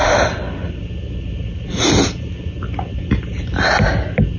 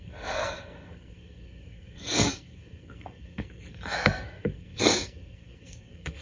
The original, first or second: first